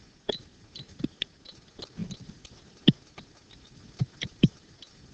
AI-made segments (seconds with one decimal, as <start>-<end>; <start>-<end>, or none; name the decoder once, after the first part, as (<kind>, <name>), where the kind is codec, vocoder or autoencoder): none